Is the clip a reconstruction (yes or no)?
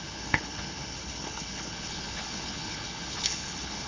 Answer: yes